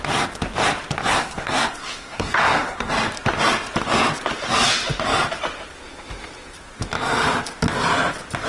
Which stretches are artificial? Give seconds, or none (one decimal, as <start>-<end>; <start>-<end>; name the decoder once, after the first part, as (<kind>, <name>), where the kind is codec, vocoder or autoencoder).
1.1-2.9 (codec, SNAC)